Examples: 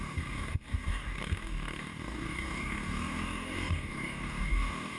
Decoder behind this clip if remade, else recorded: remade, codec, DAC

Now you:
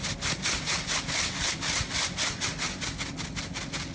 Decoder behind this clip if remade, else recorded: recorded